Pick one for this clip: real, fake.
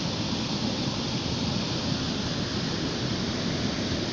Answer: real